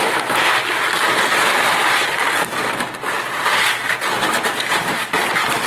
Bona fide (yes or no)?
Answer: yes